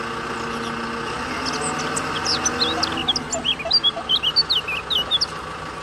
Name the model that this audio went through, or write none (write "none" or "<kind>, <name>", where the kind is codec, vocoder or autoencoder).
none